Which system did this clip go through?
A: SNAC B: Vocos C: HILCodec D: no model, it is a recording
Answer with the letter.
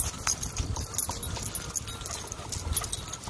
D